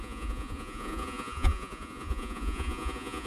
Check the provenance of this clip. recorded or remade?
remade